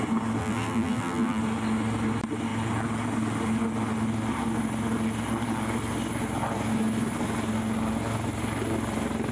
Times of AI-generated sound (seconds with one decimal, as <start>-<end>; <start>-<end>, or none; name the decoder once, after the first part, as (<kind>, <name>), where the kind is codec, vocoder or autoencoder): 0.4-1.4 (vocoder, BigVGAN v2)